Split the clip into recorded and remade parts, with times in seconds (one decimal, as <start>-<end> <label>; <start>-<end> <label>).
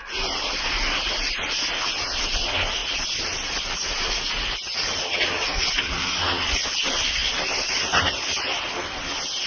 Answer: 0.0-9.5 recorded